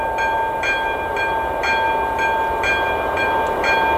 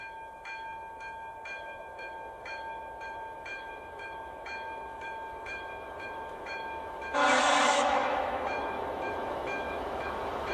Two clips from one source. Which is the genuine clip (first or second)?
first